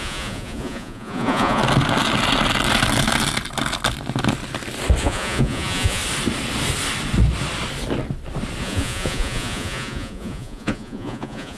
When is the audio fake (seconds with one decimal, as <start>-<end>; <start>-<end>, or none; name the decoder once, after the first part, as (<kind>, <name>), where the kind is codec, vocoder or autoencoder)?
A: 0.0-1.6 (vocoder, Vocos); 5.0-6.0; 8.6-11.6